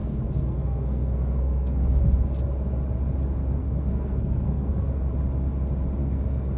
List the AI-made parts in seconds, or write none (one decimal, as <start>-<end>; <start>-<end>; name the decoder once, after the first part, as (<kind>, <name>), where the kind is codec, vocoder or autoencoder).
0.0-2.0 (codec, SNAC); 3.6-5.1; 6.0-6.6